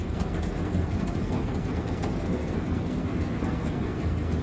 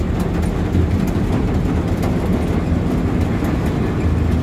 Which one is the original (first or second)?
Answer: second